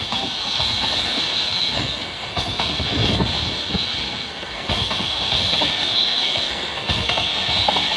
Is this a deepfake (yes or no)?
yes